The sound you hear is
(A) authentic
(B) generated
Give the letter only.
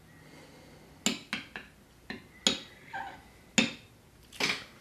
A